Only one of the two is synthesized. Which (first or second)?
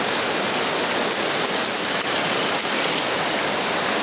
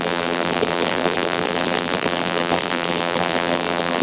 second